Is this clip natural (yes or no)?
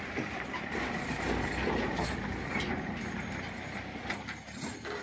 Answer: yes